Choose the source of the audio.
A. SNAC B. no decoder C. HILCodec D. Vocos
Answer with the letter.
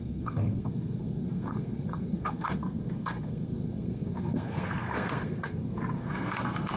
A